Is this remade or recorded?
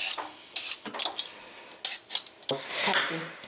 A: recorded